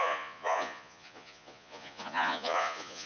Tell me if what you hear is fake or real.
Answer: fake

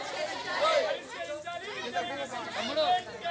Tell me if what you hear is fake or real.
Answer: real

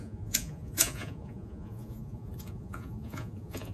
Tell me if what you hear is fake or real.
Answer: fake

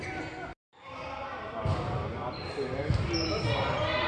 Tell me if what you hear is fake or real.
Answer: real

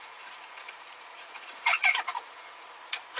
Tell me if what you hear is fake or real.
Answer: fake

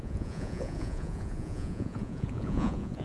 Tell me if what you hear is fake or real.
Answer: fake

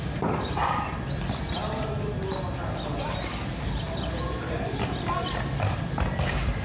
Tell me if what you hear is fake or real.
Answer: real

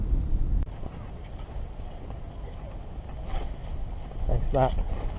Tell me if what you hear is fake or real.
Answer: real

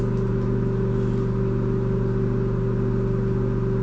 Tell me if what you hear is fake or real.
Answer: real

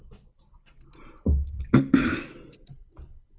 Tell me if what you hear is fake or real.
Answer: real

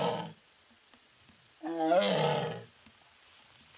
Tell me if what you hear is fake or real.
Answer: real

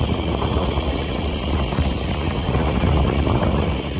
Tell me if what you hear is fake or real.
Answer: fake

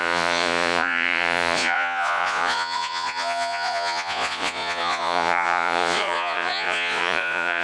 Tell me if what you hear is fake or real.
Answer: fake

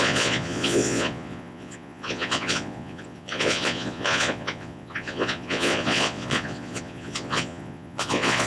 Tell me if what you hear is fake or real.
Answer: fake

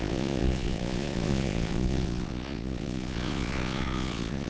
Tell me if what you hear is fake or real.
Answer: fake